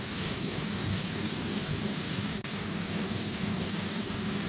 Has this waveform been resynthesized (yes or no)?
yes